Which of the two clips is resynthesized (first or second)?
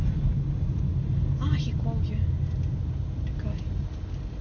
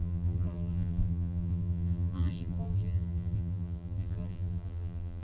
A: second